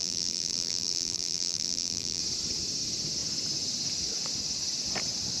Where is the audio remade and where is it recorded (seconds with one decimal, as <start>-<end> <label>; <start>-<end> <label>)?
0.0-2.2 remade; 2.2-5.4 recorded